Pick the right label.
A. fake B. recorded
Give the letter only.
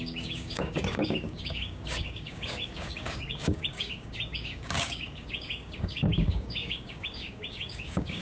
A